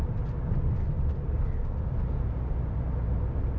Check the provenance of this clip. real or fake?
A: real